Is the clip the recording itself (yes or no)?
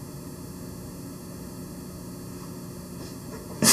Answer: yes